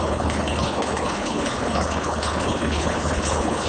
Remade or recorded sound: remade